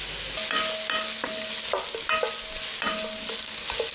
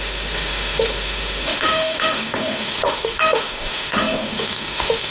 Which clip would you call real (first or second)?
first